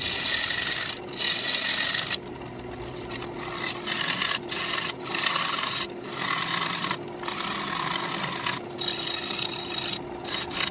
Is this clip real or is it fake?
real